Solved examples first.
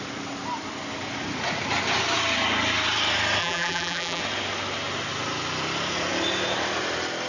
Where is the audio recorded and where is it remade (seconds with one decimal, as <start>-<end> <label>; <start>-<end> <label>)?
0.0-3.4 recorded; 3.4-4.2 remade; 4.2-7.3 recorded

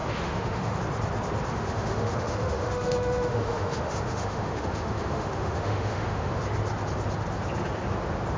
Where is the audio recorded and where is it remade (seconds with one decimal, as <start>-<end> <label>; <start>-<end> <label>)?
0.0-0.8 remade; 0.8-1.5 recorded; 1.5-6.4 remade; 6.4-8.4 recorded

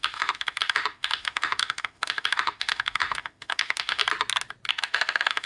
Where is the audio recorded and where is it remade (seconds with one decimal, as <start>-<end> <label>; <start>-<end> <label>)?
0.0-4.0 remade; 4.0-4.7 recorded; 4.7-5.5 remade